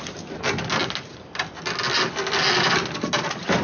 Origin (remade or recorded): recorded